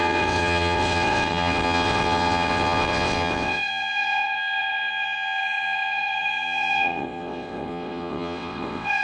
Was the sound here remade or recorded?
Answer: remade